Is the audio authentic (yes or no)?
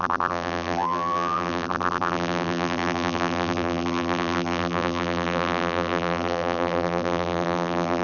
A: no